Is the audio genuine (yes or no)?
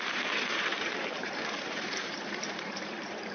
no